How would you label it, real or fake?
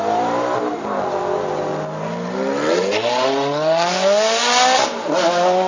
real